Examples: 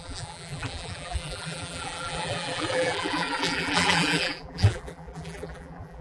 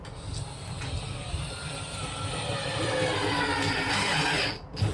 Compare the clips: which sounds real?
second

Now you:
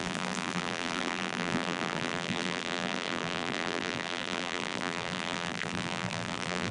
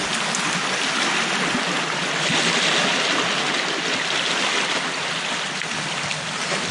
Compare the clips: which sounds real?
second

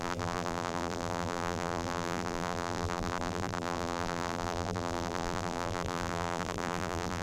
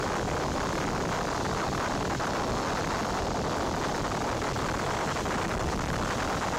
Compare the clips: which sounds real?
second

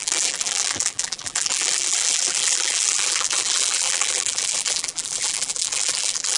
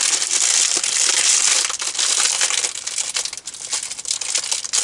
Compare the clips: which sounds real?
second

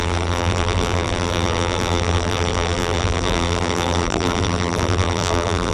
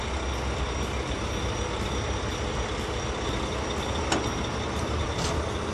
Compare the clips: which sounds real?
second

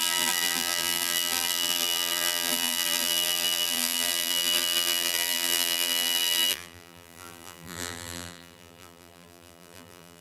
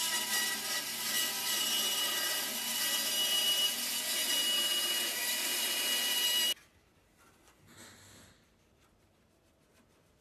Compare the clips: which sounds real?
second